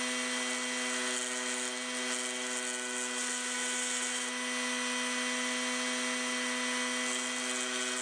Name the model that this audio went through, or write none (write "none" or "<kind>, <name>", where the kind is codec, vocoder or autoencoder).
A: none